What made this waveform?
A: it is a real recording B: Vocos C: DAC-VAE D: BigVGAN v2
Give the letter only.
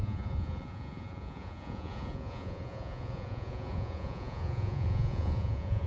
B